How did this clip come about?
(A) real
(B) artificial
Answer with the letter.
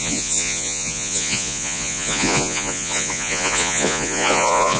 B